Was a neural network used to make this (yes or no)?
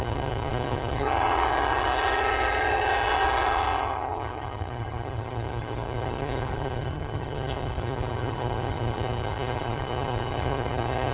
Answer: yes